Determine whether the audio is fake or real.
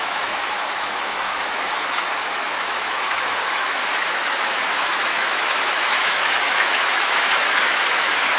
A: fake